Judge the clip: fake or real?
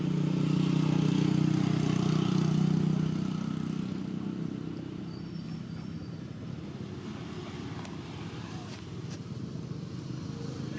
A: real